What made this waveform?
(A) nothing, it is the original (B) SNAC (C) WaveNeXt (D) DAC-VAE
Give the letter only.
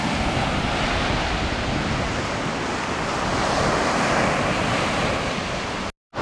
A